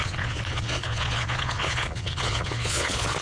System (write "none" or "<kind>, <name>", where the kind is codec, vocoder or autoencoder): vocoder, Vocos